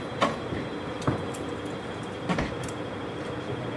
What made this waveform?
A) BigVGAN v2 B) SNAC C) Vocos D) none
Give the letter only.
D